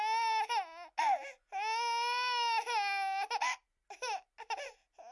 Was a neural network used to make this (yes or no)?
no